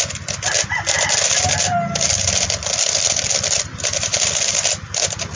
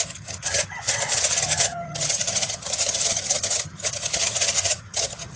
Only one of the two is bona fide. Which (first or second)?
first